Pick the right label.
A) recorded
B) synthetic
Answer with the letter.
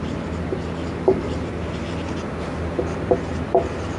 A